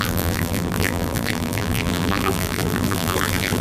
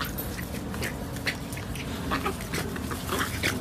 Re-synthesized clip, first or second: first